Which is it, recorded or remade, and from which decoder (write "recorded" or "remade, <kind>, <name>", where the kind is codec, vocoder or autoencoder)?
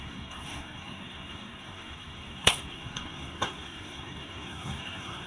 remade, codec, SNAC